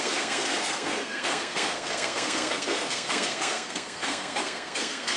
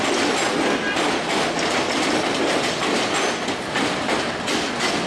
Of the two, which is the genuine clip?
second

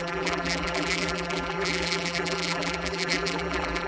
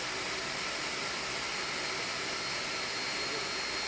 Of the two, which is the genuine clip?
second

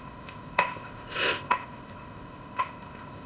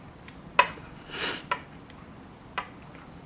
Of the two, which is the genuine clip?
second